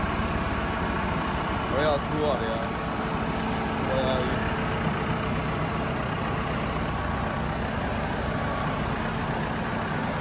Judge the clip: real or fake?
real